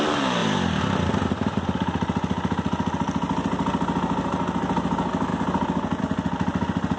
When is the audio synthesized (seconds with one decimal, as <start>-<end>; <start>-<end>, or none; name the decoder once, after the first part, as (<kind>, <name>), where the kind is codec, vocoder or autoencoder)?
none